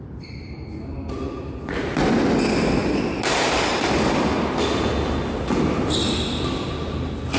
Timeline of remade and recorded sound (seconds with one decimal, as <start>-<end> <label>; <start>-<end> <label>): 0.0-7.4 recorded